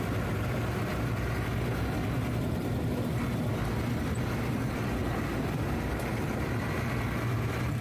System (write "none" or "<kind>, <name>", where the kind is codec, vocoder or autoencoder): none